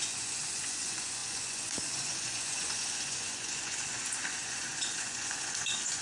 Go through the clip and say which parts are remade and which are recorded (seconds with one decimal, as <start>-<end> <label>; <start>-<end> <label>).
0.0-6.0 remade